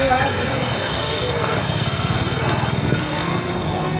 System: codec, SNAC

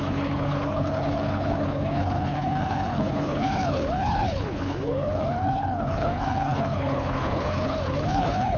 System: codec, HILCodec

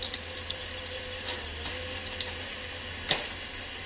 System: none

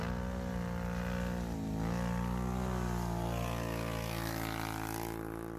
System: none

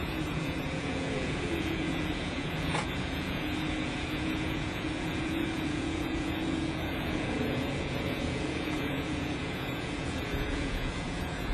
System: vocoder, Vocos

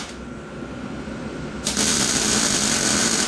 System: none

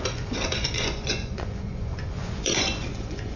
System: vocoder, Vocos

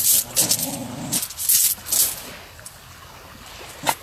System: none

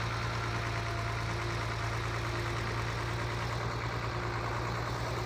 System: none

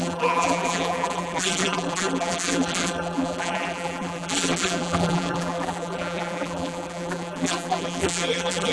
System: vocoder, BigVGAN v2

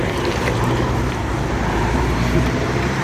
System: vocoder, BigVGAN v2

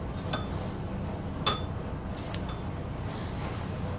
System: none